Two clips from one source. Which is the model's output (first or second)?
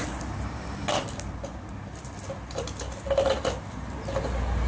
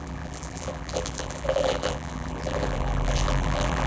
second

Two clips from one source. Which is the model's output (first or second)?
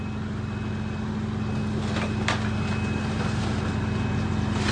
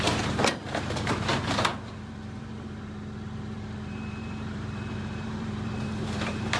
second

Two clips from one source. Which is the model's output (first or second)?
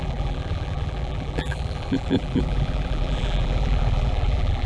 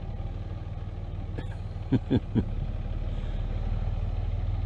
first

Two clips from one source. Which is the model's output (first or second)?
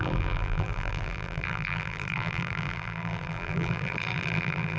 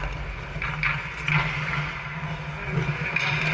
first